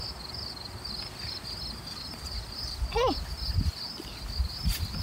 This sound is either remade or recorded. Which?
recorded